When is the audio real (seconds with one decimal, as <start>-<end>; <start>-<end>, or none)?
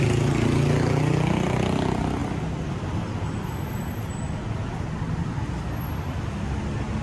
0.0-7.0